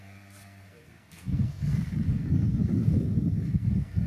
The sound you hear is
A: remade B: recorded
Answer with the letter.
A